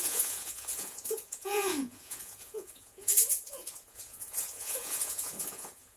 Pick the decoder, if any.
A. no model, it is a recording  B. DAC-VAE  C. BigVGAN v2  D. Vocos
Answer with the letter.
D